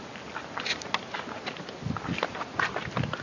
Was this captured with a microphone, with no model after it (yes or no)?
yes